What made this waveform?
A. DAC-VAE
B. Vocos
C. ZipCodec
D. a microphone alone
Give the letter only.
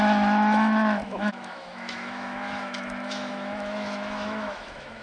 A